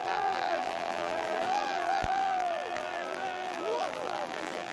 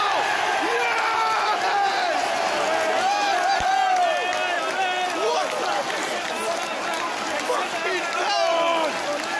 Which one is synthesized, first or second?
first